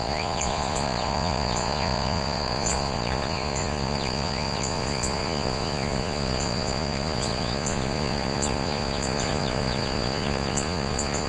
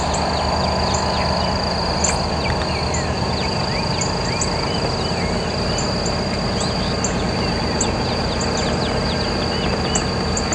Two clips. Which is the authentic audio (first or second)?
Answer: second